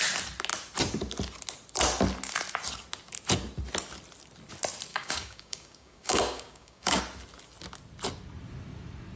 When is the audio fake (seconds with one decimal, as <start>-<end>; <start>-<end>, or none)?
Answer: 4.9-7.0